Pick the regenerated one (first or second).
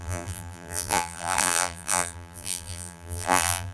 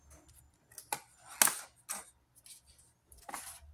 first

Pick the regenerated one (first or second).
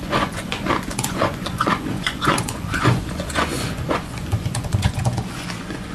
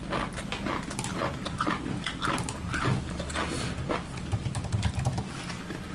first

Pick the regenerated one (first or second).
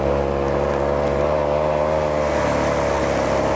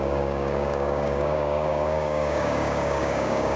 second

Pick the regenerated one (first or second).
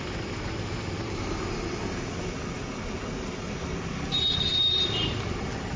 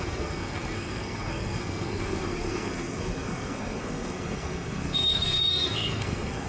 second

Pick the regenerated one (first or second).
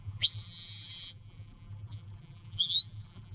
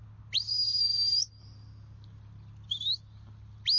first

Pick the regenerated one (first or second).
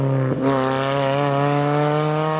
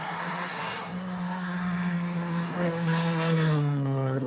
second